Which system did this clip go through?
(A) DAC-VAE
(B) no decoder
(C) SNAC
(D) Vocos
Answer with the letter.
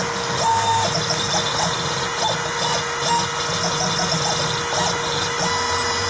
B